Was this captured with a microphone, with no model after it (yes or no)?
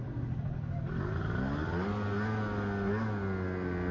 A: yes